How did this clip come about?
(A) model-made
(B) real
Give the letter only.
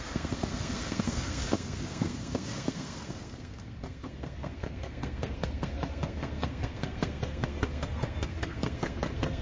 A